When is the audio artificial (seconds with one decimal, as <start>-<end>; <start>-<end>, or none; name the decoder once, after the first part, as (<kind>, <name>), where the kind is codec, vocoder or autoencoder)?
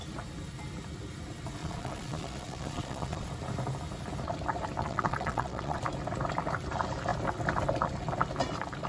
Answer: 1.6-3.3 (vocoder, Vocos); 4.8-5.8